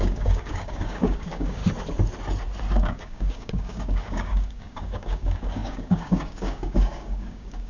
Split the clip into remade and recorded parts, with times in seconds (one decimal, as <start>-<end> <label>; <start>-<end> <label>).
0.0-1.6 remade; 1.6-2.7 recorded; 2.7-7.7 remade